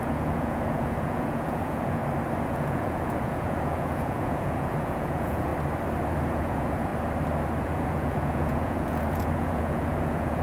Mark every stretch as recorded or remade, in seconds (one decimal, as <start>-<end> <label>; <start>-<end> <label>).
0.0-2.0 remade; 2.0-2.5 recorded; 2.5-5.5 remade; 5.5-6.3 recorded; 6.3-6.9 remade; 6.9-7.6 recorded; 7.6-10.4 remade